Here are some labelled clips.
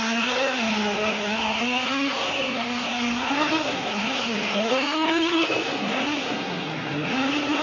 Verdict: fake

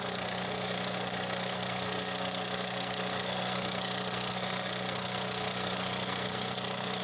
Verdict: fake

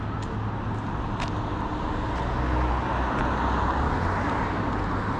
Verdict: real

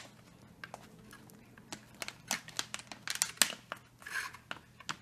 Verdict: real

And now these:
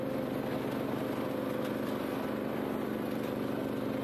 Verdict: real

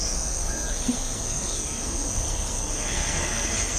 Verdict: fake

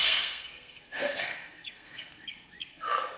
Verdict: fake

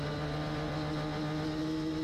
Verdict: real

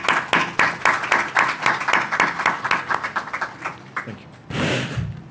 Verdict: real